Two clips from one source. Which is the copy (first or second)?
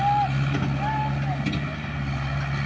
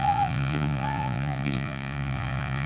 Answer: second